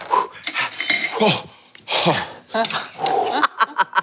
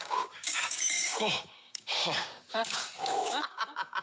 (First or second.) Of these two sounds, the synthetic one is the second